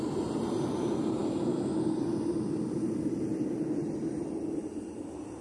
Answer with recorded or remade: recorded